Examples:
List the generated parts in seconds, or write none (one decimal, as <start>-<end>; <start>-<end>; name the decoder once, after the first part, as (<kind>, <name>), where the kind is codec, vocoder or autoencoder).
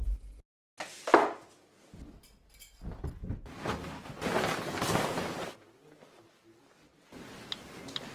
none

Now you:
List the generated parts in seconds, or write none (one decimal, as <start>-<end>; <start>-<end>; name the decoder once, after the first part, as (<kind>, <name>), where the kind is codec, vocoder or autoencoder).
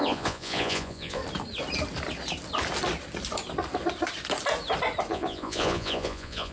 0.0-1.2 (vocoder, Vocos); 5.1-6.5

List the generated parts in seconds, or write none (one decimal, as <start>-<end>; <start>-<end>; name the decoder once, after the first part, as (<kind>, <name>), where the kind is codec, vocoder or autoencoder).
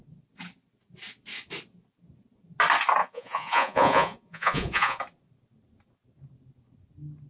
3.0-5.0 (vocoder, Vocos)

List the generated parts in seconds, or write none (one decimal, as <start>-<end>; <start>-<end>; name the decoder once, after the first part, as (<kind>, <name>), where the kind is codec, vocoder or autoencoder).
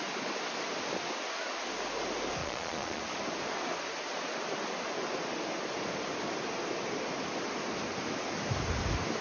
2.4-3.0 (vocoder, Vocos)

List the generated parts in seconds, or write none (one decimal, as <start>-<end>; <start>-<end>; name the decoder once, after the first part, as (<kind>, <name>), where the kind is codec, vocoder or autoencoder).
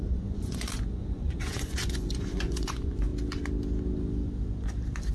0.0-3.1 (vocoder, Vocos)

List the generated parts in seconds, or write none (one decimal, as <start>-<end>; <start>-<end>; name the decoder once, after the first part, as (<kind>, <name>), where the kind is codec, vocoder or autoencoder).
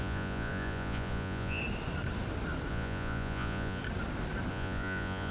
0.0-1.6 (vocoder, Vocos); 2.7-3.8; 4.5-5.3